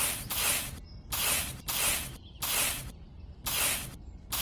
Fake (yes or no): no